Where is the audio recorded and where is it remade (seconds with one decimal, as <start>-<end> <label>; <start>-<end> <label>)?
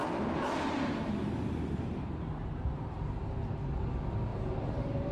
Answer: 0.0-4.3 recorded; 4.3-5.1 remade